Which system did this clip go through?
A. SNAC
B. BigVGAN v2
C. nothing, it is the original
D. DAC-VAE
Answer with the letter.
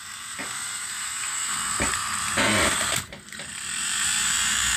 B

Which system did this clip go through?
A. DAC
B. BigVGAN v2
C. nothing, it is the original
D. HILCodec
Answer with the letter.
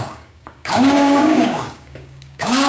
A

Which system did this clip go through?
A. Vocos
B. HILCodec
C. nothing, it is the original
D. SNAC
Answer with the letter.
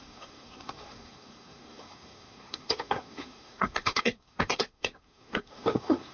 D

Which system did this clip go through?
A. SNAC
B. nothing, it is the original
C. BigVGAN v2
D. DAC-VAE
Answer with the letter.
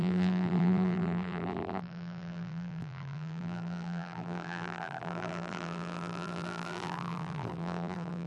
C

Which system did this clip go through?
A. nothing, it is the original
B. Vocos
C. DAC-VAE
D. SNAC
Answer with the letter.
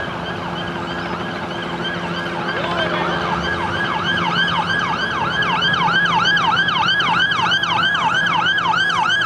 A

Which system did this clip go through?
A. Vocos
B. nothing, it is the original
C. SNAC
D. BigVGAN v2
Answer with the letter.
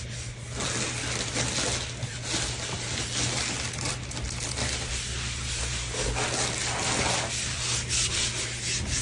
B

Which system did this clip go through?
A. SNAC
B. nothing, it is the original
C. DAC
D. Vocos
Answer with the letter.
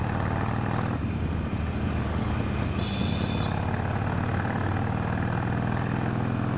B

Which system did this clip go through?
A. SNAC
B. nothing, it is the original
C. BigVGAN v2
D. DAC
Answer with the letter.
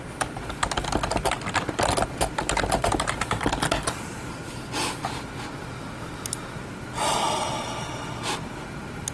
B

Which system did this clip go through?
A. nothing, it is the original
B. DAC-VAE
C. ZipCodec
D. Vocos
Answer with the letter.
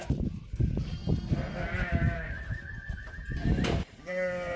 A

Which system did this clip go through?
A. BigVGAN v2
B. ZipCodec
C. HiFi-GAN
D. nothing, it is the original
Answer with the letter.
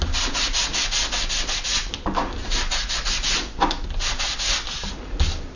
D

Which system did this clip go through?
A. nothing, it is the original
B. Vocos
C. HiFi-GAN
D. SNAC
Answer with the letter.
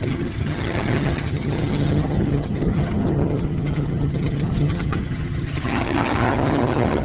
C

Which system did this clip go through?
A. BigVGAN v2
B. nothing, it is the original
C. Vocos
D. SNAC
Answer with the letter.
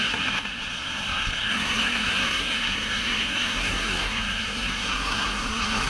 D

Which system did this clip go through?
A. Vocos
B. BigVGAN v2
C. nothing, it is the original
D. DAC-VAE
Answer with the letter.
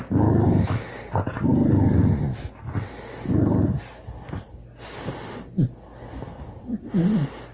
C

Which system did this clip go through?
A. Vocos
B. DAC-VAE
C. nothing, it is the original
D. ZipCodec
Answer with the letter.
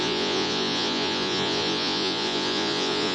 A